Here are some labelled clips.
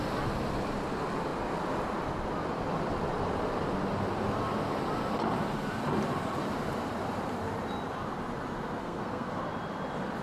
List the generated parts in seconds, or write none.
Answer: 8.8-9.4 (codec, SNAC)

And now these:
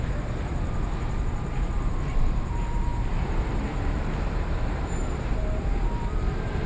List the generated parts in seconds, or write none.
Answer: 0.0-6.7 (vocoder, BigVGAN v2)

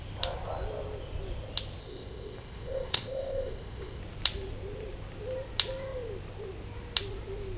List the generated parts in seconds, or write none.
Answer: 1.8-4.0 (codec, ZipCodec)

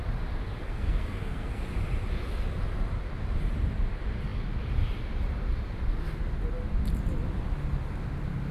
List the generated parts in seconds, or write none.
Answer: 0.6-1.6 (codec, SNAC)

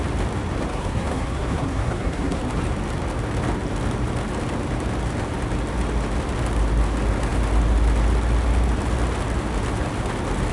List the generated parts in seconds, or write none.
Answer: 0.7-2.4 (codec, SNAC)

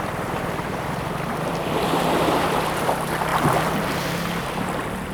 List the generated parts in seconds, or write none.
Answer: none

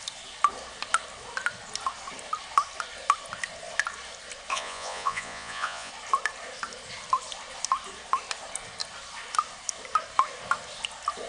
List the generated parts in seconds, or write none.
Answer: 4.5-5.9 (vocoder, Vocos)